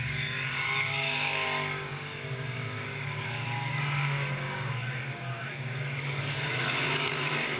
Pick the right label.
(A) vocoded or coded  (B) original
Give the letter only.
A